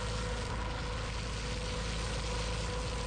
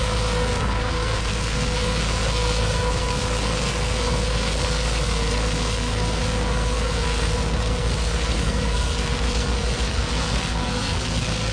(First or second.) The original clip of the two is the first